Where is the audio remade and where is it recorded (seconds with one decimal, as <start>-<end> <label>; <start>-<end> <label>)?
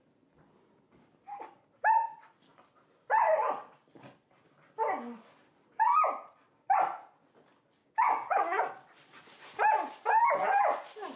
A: 0.0-7.8 recorded; 7.8-8.6 remade; 8.6-11.2 recorded